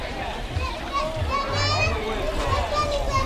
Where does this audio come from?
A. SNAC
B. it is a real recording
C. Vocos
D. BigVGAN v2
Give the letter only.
B